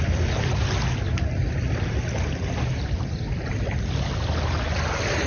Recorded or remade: recorded